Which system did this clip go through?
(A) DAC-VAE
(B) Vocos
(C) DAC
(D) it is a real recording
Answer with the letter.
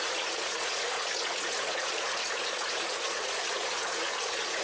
B